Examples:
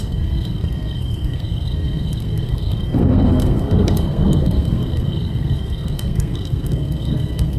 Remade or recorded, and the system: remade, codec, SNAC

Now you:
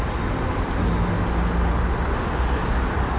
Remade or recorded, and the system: recorded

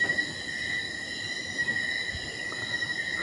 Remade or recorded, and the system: recorded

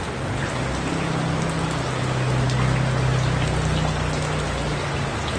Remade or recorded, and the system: recorded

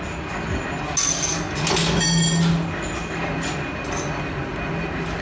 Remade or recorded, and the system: recorded